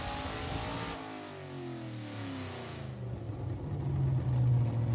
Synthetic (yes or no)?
no